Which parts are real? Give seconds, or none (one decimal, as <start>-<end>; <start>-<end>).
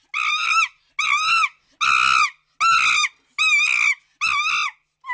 0.0-5.1